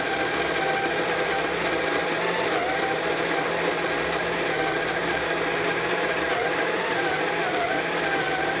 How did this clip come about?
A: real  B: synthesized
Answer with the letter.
A